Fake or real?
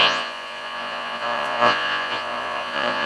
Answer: fake